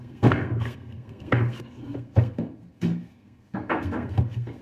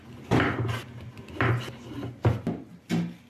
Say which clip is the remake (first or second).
first